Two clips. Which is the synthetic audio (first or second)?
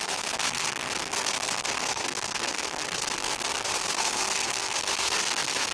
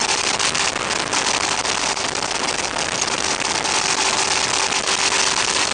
first